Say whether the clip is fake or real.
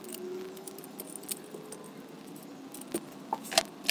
real